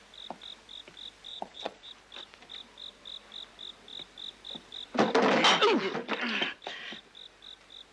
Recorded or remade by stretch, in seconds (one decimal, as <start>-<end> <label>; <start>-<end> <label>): 0.0-1.3 recorded; 1.3-1.9 remade; 1.9-7.9 recorded